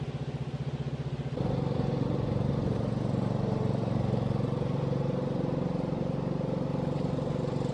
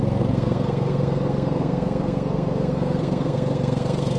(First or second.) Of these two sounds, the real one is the first